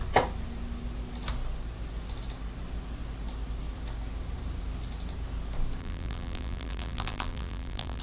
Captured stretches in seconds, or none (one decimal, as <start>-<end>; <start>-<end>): 0.0-5.8